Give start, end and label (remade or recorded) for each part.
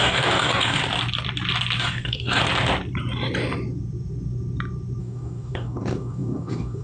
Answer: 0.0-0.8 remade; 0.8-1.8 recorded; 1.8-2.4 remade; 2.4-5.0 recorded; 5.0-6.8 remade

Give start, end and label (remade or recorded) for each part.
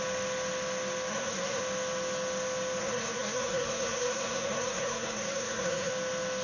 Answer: 0.0-1.1 recorded; 1.1-1.6 remade; 1.6-2.8 recorded; 2.8-5.9 remade; 5.9-6.4 recorded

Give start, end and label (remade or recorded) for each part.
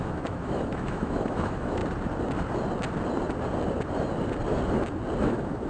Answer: 0.0-1.8 remade; 1.8-5.2 recorded; 5.2-5.7 remade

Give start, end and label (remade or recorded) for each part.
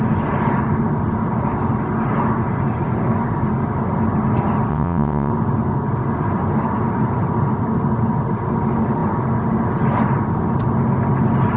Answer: 0.0-4.7 recorded; 4.7-5.3 remade; 5.3-11.6 recorded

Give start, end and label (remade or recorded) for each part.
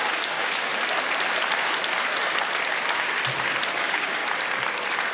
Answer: 0.0-0.7 remade; 0.7-3.8 recorded; 3.8-4.2 remade; 4.2-5.1 recorded